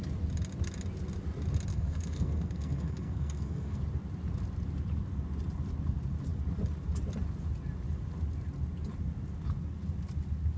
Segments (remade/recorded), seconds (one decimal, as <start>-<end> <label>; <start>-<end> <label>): 0.0-1.7 recorded; 1.7-3.8 remade; 3.8-10.6 recorded

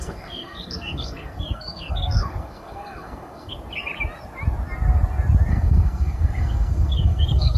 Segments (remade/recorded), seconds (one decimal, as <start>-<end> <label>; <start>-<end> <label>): 0.0-3.5 remade; 3.5-5.5 recorded; 5.5-7.6 remade

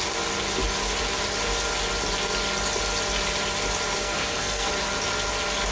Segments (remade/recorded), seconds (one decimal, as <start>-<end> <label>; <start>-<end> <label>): 0.0-4.0 recorded; 4.0-4.7 remade; 4.7-5.7 recorded

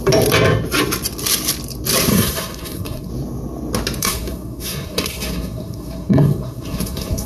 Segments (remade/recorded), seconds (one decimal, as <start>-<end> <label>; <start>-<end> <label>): 0.0-2.1 recorded; 2.1-3.1 remade; 3.1-4.0 recorded; 4.0-7.3 remade

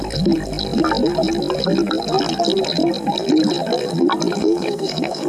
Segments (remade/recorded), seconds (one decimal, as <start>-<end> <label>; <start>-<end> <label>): 0.0-4.4 recorded; 4.4-5.3 remade

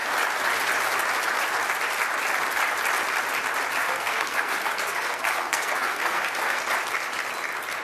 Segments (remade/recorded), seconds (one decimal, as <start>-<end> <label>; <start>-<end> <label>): 0.0-3.8 recorded; 3.8-6.6 remade; 6.6-7.8 recorded

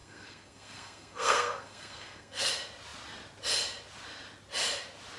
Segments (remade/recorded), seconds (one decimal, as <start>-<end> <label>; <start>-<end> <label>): 0.0-2.5 remade; 2.5-5.2 recorded

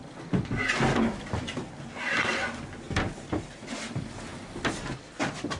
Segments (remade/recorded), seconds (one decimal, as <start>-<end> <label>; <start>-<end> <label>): 0.0-5.6 recorded